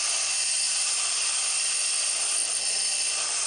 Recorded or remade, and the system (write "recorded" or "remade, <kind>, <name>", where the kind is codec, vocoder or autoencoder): recorded